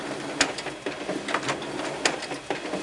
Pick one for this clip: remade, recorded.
recorded